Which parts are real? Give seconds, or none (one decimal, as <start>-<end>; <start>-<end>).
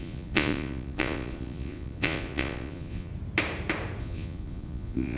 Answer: 3.1-4.0